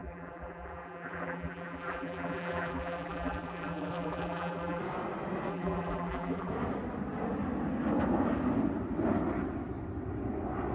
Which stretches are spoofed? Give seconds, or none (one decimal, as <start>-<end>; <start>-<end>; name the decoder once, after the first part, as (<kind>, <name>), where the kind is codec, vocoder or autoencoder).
0.0-4.8 (vocoder, BigVGAN v2); 5.5-6.5

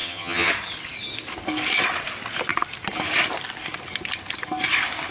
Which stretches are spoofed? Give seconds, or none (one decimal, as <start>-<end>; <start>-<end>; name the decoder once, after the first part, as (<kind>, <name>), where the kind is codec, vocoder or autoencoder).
0.0-0.5 (vocoder, HiFi-GAN)

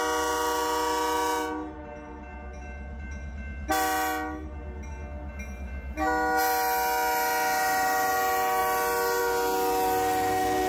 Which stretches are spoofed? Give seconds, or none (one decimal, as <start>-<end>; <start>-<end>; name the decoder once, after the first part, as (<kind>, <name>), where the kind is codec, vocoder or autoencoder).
none

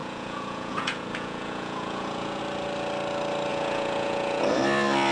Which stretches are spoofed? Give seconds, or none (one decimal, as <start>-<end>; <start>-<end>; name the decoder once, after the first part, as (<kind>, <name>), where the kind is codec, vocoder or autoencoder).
0.0-2.4 (vocoder, Vocos); 3.5-4.4

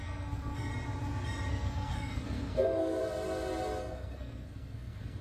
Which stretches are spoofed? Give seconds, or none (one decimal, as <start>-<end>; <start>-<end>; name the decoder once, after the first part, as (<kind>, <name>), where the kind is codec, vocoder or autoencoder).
0.0-0.7 (codec, SNAC); 1.5-3.0; 3.8-5.2